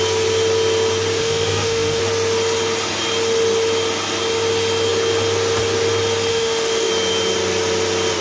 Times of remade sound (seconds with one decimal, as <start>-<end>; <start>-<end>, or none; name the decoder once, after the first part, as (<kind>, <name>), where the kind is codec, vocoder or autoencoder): 1.2-2.0 (autoencoder, DAC-VAE); 6.3-6.9